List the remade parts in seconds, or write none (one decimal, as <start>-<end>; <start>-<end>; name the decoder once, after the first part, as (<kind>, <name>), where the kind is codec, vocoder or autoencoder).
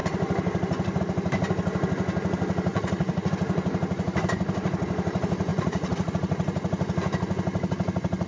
2.7-3.3 (vocoder, Vocos); 5.5-6.1